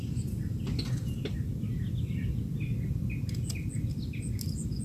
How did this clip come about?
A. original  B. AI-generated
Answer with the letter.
A